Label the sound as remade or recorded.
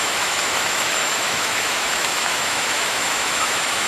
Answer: remade